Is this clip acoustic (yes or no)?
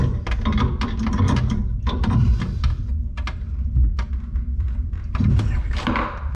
no